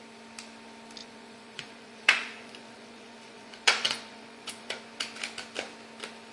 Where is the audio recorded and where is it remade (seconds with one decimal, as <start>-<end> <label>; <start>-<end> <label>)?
0.0-1.0 recorded; 1.0-4.8 remade; 4.8-6.3 recorded